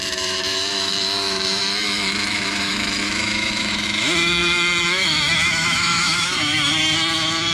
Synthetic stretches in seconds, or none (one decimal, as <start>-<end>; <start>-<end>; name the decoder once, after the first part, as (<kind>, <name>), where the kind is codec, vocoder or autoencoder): 0.0-7.5 (autoencoder, DAC-VAE)